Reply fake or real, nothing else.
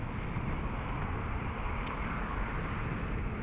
real